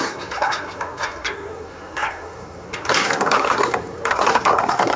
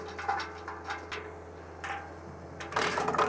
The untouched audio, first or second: second